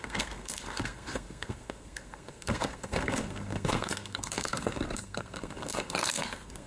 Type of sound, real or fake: fake